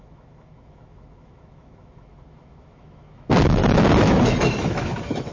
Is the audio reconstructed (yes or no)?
yes